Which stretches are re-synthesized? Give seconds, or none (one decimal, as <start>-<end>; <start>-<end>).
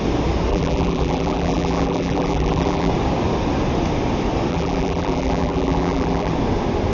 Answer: 0.5-2.9; 4.5-6.3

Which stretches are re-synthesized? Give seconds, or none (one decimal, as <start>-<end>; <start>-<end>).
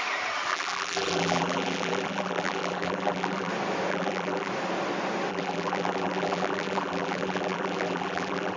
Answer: 0.5-3.5; 3.9-4.5; 5.3-8.6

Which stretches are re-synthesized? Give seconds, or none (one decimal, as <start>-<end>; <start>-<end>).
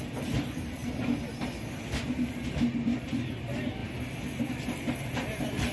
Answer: 0.0-0.8; 1.6-3.8; 4.4-5.7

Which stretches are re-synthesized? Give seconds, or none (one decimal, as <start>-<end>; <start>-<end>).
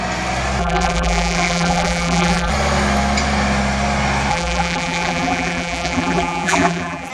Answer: 0.6-2.5; 4.3-7.1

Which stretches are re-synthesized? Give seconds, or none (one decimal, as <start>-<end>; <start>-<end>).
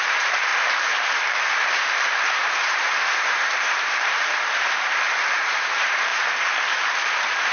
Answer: 0.0-0.5; 2.2-6.1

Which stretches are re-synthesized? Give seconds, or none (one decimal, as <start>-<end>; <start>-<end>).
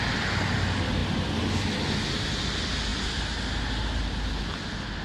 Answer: 1.0-2.0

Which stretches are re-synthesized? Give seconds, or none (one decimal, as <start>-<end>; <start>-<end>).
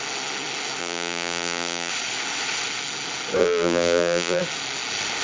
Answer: 0.8-1.9; 3.4-4.4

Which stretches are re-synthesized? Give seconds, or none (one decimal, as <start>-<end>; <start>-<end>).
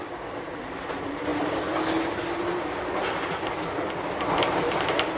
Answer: 0.0-1.3; 4.4-5.2